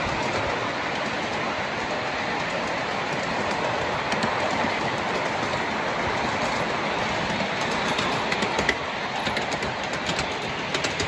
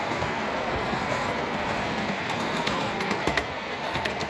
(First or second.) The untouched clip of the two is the first